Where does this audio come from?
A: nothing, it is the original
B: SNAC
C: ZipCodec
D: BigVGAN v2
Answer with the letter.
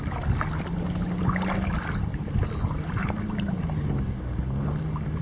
A